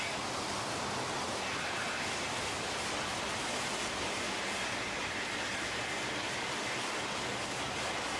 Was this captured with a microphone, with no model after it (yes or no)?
yes